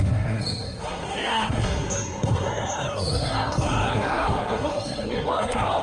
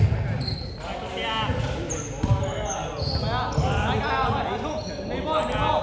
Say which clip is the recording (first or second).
second